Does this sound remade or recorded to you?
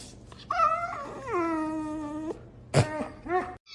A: recorded